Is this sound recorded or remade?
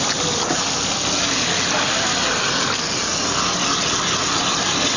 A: recorded